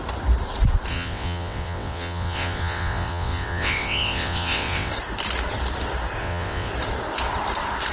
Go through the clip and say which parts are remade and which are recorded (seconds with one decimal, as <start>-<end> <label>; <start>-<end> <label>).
0.0-0.9 recorded; 0.9-4.9 remade; 4.9-6.2 recorded; 6.2-6.7 remade; 6.7-7.9 recorded

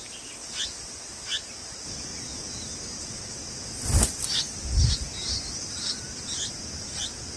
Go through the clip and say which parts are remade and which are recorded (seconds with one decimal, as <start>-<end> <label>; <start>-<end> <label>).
0.0-7.4 recorded

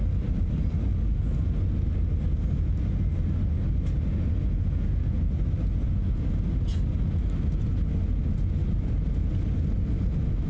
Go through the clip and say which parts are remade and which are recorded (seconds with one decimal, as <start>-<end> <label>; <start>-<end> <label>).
0.0-10.5 recorded

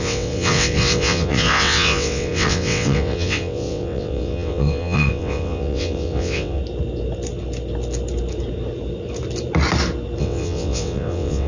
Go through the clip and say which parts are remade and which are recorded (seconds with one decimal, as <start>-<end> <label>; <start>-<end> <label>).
0.0-6.6 remade; 6.6-10.2 recorded; 10.2-11.5 remade

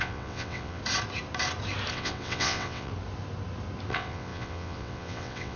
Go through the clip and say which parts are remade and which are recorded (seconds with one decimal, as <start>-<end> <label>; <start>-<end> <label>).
0.0-0.8 remade; 0.8-1.9 recorded; 1.9-2.9 remade; 2.9-3.9 recorded; 3.9-5.6 remade

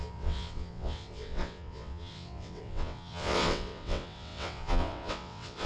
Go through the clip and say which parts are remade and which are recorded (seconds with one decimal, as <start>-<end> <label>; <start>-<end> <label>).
0.0-5.7 remade

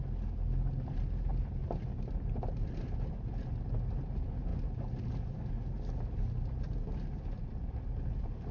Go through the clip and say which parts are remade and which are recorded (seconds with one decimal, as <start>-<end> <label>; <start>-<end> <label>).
0.0-8.5 recorded